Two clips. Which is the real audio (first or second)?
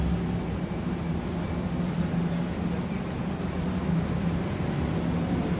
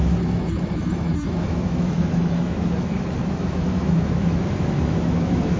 first